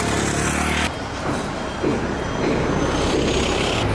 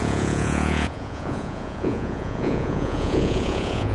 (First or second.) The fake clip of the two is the second